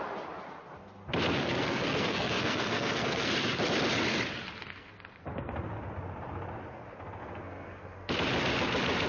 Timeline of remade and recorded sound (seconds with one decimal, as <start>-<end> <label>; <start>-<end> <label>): 0.0-1.4 recorded; 1.4-3.3 remade; 3.3-4.7 recorded; 4.7-5.5 remade; 5.5-7.2 recorded; 7.2-8.1 remade; 8.1-9.1 recorded